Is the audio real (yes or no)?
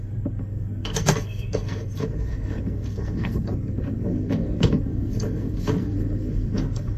no